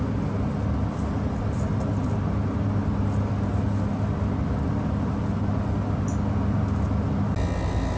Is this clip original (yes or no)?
yes